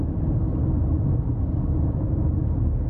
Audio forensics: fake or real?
real